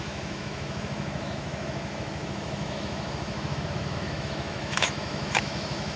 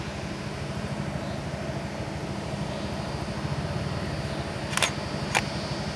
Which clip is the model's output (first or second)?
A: first